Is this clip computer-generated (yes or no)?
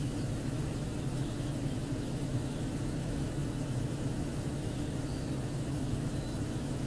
yes